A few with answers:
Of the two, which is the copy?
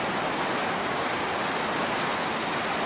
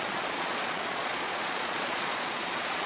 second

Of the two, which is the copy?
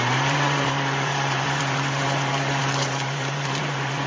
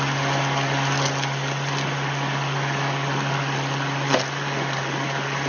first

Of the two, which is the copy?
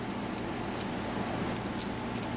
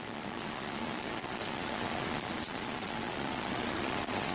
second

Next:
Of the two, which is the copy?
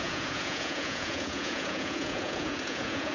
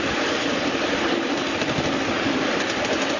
first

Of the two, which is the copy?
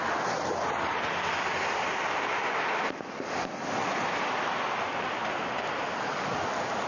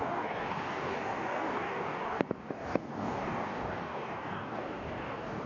second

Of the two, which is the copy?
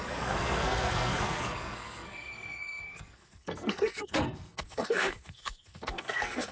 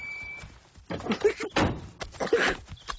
first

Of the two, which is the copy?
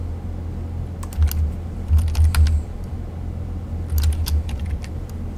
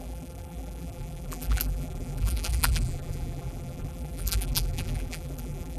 second